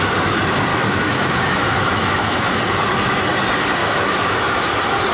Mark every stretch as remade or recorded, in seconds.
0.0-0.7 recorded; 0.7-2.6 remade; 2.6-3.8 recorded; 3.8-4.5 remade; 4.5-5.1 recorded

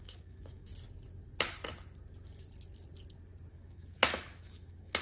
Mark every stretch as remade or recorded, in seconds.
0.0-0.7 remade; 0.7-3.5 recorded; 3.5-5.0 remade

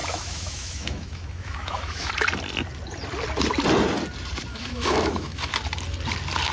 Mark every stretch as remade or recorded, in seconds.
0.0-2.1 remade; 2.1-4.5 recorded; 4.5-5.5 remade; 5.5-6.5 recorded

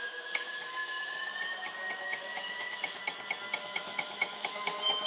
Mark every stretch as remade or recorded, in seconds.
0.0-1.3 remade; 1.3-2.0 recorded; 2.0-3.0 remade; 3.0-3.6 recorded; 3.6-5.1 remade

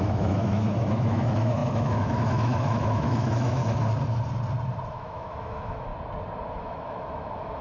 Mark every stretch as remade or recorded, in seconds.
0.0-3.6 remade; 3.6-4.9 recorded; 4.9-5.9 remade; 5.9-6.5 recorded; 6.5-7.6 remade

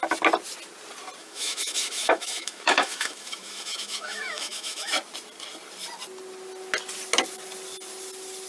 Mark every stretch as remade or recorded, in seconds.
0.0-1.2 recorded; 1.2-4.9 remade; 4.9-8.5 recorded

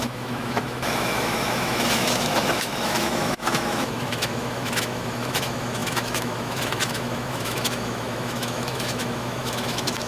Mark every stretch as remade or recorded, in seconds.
0.0-10.1 remade

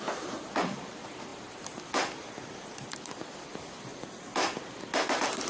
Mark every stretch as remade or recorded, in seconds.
0.0-5.5 recorded